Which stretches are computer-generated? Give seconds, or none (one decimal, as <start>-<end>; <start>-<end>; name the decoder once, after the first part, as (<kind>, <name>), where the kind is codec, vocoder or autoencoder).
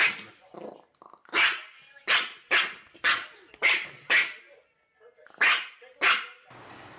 none